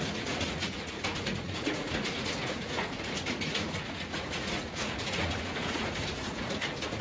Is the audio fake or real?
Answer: fake